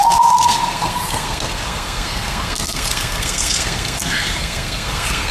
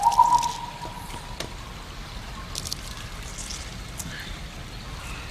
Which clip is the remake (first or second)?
first